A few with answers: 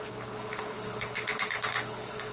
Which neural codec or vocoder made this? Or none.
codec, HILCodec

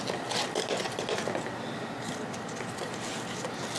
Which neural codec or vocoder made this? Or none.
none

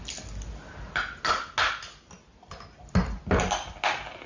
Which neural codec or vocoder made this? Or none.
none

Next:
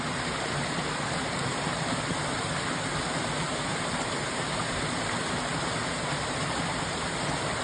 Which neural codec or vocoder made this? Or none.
none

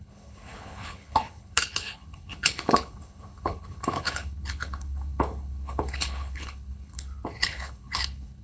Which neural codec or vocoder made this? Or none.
codec, HILCodec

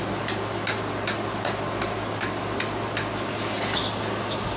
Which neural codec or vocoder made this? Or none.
none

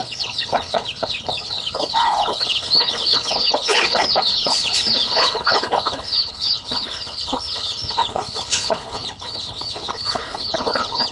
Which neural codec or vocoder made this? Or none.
codec, HILCodec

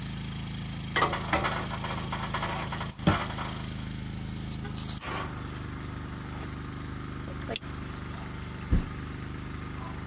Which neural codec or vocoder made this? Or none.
none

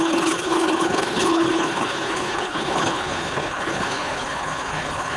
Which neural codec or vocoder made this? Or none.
codec, HILCodec